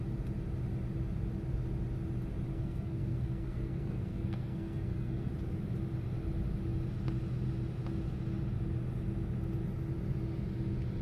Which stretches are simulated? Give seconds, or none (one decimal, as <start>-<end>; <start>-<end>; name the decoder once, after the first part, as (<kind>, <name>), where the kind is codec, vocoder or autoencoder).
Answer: 2.5-5.3 (codec, SNAC)